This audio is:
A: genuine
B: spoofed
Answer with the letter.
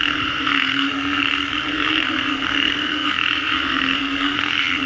B